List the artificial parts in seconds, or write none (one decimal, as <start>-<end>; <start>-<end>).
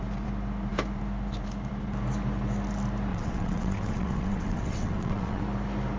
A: 3.1-5.4